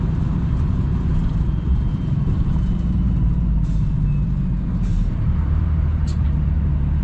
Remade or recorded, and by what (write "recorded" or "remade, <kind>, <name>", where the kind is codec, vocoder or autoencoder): remade, vocoder, BigVGAN v2